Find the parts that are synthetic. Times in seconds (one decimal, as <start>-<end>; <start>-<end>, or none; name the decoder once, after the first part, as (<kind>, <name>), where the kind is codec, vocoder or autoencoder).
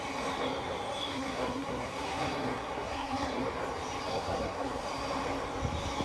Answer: 1.1-3.4 (codec, SNAC); 4.1-4.8